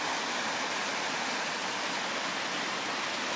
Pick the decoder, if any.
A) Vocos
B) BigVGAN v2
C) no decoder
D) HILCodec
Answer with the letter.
C